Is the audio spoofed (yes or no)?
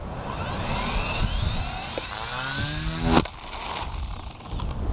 no